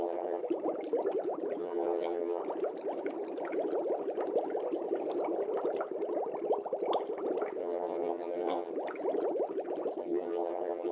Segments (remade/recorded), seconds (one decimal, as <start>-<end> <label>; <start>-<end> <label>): 0.0-0.4 remade; 0.4-1.6 recorded; 1.6-2.4 remade; 2.4-7.6 recorded; 7.6-8.7 remade; 8.7-10.0 recorded; 10.0-10.9 remade